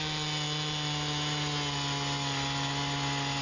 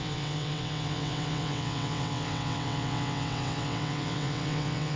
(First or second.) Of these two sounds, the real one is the first